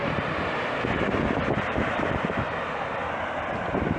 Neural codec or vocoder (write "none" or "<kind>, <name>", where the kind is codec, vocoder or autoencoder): vocoder, BigVGAN v2